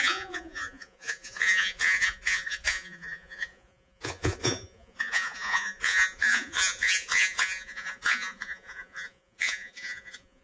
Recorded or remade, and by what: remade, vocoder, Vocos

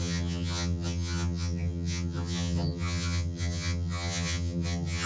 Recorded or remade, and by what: remade, vocoder, HiFi-GAN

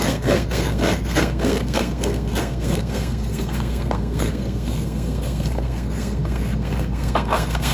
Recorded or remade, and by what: remade, codec, SNAC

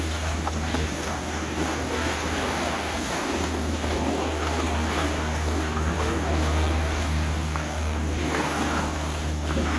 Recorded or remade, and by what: remade, codec, DAC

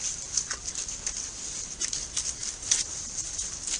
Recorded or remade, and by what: recorded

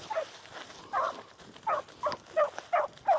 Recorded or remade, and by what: recorded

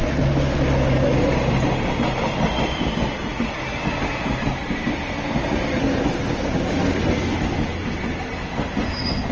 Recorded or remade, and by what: recorded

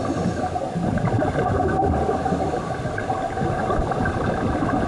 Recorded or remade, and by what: recorded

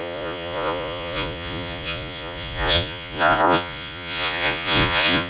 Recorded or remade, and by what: remade, vocoder, Vocos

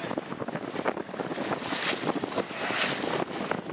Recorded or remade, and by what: recorded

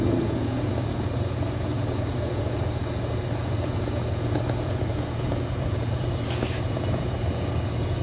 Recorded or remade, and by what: remade, vocoder, Vocos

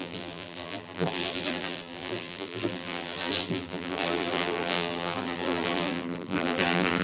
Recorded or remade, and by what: remade, vocoder, BigVGAN v2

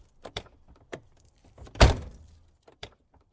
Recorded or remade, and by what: remade, vocoder, BigVGAN v2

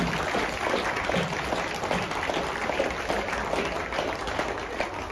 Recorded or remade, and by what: recorded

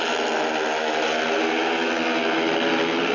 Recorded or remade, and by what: recorded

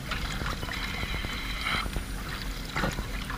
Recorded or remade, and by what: recorded